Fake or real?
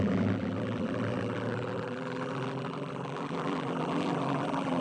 fake